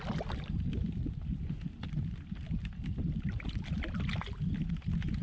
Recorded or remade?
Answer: recorded